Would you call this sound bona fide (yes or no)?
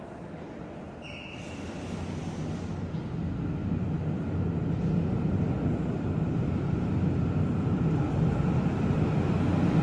yes